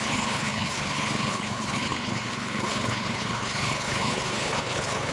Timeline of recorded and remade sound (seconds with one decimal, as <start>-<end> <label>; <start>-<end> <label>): 0.0-5.1 remade

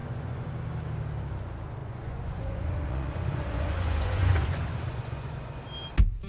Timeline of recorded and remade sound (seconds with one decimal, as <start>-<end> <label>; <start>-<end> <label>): 0.0-0.5 remade; 0.5-1.8 recorded; 1.8-5.6 remade; 5.6-6.3 recorded

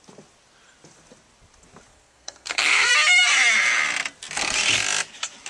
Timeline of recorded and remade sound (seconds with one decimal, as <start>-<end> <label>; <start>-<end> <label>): 0.0-1.9 recorded; 1.9-2.9 remade; 2.9-5.5 recorded

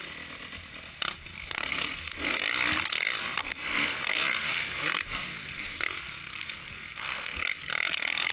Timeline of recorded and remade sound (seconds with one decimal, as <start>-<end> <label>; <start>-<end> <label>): 0.0-1.4 recorded; 1.4-2.4 remade; 2.4-3.4 recorded; 3.4-5.8 remade; 5.8-6.2 recorded; 6.2-7.7 remade; 7.7-8.3 recorded

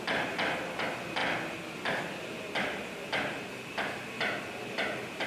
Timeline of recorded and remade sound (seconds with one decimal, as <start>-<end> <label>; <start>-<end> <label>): 0.0-5.3 recorded

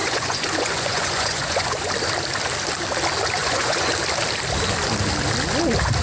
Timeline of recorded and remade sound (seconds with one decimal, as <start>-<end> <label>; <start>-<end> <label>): 0.0-1.9 remade; 1.9-3.4 recorded; 3.4-3.9 remade; 3.9-6.0 recorded

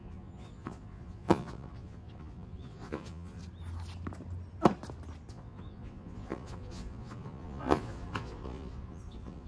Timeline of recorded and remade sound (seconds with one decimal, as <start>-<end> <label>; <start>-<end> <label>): 0.0-3.4 remade; 3.4-5.3 recorded; 5.3-9.5 remade